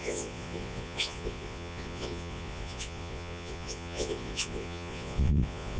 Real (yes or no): no